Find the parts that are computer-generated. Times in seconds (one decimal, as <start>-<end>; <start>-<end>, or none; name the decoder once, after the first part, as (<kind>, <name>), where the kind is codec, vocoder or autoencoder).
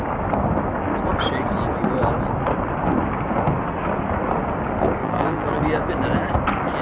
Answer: 5.0-5.6 (vocoder, BigVGAN v2)